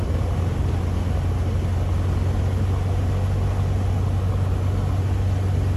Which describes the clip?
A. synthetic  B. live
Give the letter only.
B